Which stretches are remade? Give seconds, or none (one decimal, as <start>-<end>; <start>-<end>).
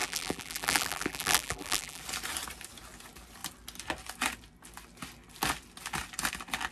0.0-2.0